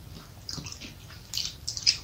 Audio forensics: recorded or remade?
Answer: remade